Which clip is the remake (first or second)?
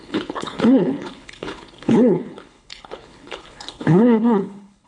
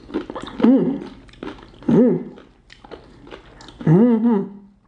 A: first